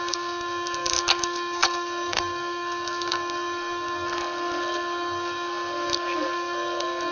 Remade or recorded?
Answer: remade